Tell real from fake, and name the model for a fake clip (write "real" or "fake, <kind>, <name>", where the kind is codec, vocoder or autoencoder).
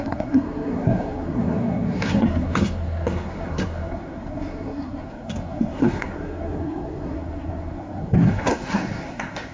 fake, codec, SNAC